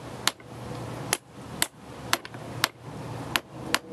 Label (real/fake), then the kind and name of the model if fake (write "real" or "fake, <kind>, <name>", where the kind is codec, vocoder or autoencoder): real